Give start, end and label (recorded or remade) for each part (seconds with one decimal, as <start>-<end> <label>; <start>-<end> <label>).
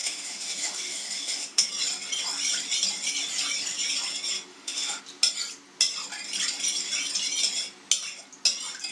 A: 0.0-1.7 remade; 1.7-4.5 recorded; 4.5-5.0 remade; 5.0-8.9 recorded